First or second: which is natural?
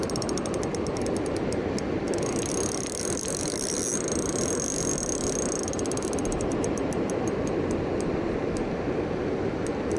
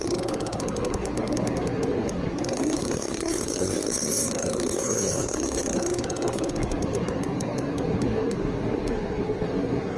first